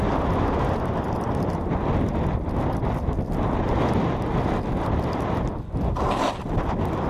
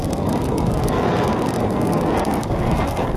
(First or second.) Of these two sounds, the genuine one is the first